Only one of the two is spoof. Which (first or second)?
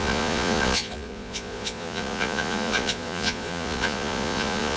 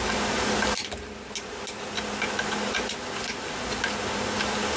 first